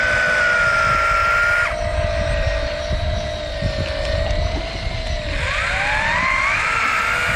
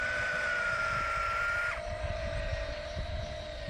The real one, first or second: first